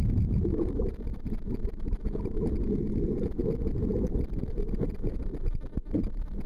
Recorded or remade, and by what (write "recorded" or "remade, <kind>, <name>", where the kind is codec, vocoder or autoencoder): remade, vocoder, BigVGAN v2